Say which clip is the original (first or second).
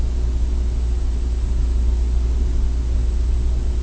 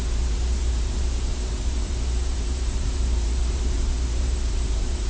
first